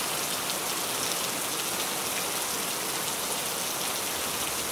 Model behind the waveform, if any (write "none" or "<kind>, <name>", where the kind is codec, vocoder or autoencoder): none